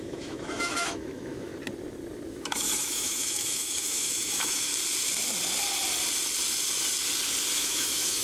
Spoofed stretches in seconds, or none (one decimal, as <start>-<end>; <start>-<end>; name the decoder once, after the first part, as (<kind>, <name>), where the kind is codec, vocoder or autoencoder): 0.0-1.5 (autoencoder, DAC-VAE); 2.3-4.7; 7.5-8.2